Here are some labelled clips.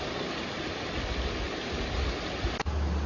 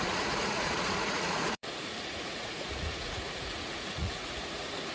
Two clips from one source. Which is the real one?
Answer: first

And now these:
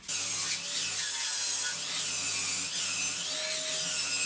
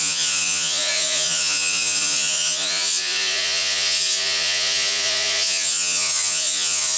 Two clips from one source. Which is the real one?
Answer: first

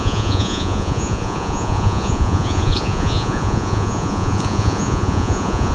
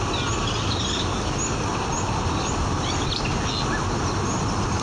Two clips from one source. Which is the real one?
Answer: second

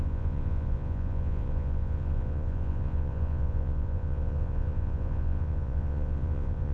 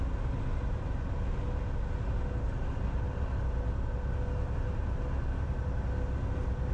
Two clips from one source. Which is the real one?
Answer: second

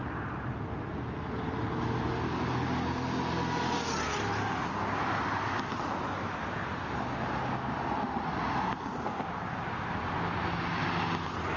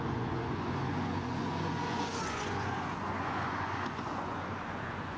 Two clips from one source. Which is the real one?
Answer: first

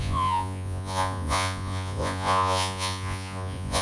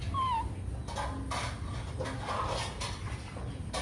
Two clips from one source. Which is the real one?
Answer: second